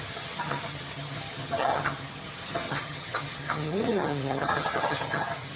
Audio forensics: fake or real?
fake